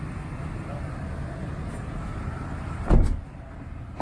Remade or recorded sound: recorded